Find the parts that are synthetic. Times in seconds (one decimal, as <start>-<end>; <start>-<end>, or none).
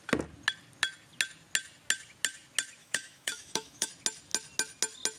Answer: 2.8-3.9